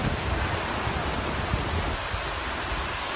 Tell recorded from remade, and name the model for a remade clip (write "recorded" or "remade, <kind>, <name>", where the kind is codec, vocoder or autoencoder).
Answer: recorded